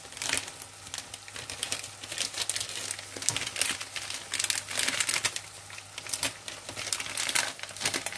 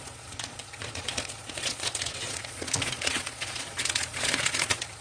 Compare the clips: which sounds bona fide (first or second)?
first